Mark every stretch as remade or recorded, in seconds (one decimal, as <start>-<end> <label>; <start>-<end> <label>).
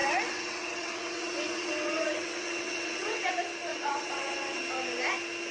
0.0-3.3 remade; 3.3-3.7 recorded; 3.7-4.6 remade; 4.6-5.5 recorded